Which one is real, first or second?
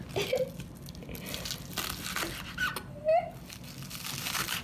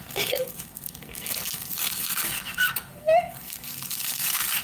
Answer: first